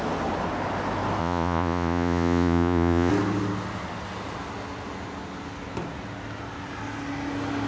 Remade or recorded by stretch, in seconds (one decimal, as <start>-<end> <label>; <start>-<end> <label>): 0.0-1.2 recorded; 1.2-3.1 remade; 3.1-7.7 recorded